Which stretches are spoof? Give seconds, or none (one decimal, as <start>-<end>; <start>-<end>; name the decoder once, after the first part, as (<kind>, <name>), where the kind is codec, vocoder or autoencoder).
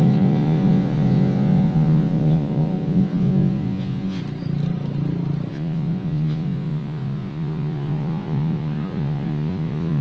0.0-4.2 (vocoder, Vocos); 5.5-10.0